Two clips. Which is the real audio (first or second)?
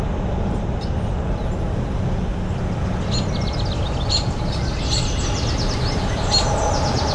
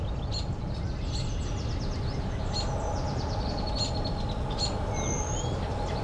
second